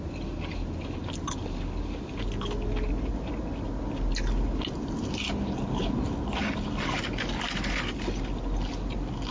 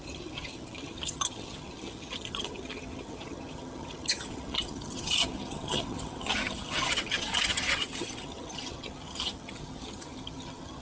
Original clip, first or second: first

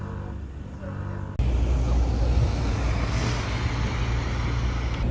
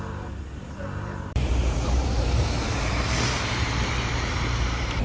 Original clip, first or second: first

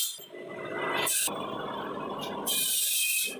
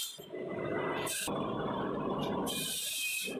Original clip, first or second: first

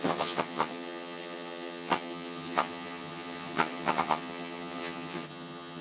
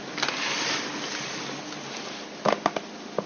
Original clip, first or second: second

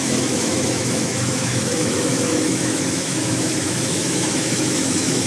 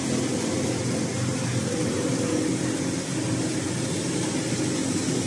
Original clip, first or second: second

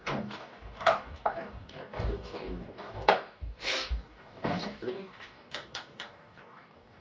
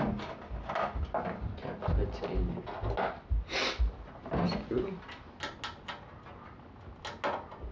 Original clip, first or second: second